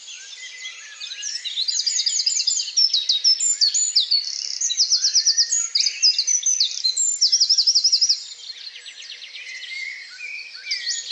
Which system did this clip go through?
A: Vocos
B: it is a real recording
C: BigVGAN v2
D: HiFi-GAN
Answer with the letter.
B